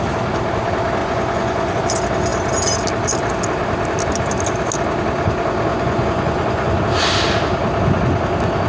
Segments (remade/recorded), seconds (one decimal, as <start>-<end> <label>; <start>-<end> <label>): 0.0-1.0 recorded; 1.0-1.8 remade; 1.8-5.7 recorded; 5.7-6.8 remade; 6.8-8.7 recorded